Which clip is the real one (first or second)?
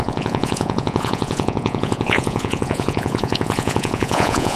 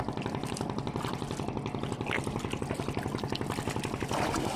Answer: second